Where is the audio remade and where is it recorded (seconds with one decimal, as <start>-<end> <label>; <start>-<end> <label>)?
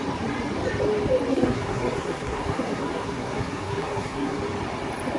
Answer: 0.0-1.3 recorded; 1.3-4.4 remade; 4.4-5.2 recorded